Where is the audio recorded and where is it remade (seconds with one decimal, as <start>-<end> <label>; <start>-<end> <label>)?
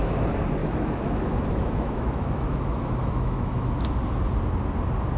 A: 0.0-0.6 recorded; 0.6-3.7 remade; 3.7-5.2 recorded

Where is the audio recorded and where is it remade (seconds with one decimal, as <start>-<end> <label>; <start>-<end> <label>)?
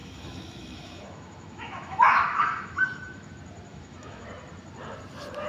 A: 0.0-3.3 remade; 3.3-3.7 recorded; 3.7-4.3 remade; 4.3-5.5 recorded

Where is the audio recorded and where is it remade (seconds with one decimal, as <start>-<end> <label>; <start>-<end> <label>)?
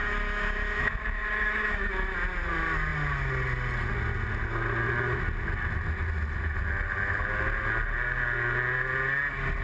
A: 0.0-1.9 remade; 1.9-9.6 recorded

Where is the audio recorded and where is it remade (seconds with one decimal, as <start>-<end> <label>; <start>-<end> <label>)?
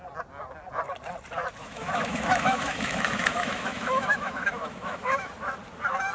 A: 0.0-1.6 recorded; 1.6-5.3 remade; 5.3-6.1 recorded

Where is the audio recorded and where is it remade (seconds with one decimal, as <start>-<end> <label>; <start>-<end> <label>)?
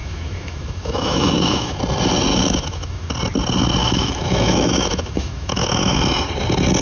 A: 0.0-1.8 remade; 1.8-2.3 recorded; 2.3-3.1 remade; 3.1-3.8 recorded; 3.8-6.0 remade; 6.0-6.8 recorded